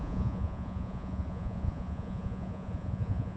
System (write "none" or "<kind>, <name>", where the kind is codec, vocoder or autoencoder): vocoder, Vocos